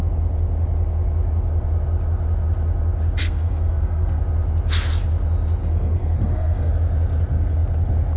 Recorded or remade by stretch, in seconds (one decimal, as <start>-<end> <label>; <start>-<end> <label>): 0.0-3.2 recorded; 3.2-4.2 remade; 4.2-5.6 recorded; 5.6-6.7 remade; 6.7-8.2 recorded